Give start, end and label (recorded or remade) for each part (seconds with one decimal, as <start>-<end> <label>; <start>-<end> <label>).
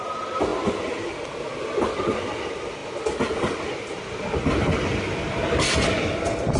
0.0-6.6 recorded